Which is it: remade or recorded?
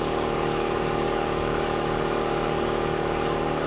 remade